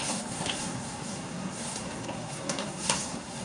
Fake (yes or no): yes